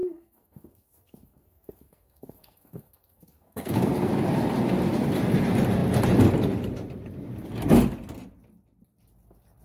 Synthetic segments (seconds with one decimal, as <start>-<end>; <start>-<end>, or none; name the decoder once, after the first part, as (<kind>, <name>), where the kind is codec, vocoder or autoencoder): 0.0-4.1 (codec, SNAC)

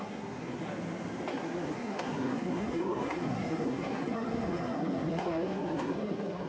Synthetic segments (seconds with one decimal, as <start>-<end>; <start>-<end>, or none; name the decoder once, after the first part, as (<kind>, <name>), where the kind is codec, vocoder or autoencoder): 0.0-0.6 (codec, SNAC); 1.3-6.5

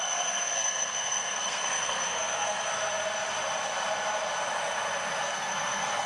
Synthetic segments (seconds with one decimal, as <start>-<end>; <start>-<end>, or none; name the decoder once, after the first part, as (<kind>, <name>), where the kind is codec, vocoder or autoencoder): 0.0-2.7 (codec, SNAC); 5.2-6.1

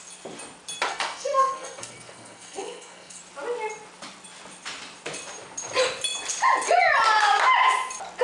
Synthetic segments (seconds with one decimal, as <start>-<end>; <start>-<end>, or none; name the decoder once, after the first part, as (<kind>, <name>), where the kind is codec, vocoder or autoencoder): 0.9-3.2 (codec, SNAC)

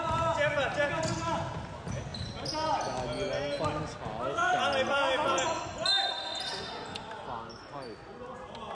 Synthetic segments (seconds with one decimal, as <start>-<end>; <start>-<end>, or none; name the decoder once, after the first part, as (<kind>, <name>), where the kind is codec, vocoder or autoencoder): none

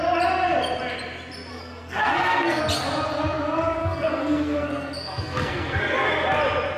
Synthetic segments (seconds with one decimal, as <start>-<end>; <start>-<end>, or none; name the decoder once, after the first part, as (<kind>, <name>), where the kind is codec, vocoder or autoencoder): 1.5-2.6 (codec, SNAC); 3.8-5.8

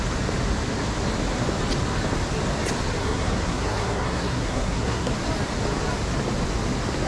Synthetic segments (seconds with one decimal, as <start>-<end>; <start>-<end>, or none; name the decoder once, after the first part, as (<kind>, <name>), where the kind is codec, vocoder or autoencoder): 3.0-5.1 (codec, SNAC)